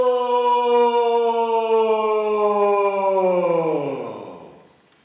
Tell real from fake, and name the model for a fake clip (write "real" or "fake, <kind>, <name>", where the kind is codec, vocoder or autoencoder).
real